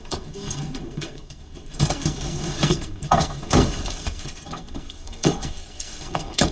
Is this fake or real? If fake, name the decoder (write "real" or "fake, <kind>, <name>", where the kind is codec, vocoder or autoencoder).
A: fake, codec, SNAC